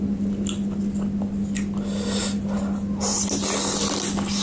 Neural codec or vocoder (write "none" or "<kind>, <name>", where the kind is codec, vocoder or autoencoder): none